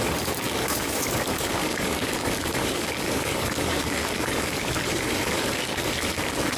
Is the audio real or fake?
fake